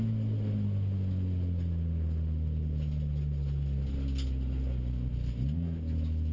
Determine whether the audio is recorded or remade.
recorded